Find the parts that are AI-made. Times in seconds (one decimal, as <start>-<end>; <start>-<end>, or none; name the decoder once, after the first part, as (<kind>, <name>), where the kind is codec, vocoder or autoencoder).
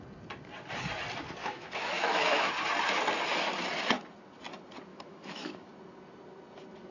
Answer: 1.4-2.5 (autoencoder, DAC-VAE); 4.9-5.7